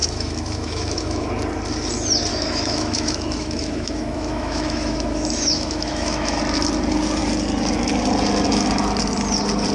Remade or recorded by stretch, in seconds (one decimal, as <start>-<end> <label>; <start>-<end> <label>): 0.0-1.3 remade; 1.3-2.3 recorded; 2.3-6.4 remade; 6.4-9.7 recorded